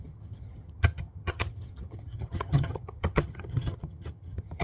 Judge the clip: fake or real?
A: fake